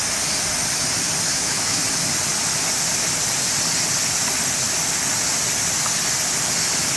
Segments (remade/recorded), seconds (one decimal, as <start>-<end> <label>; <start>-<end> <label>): 0.0-1.3 recorded; 1.3-1.8 remade; 1.8-7.0 recorded